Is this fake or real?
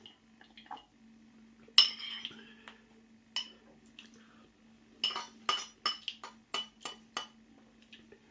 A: real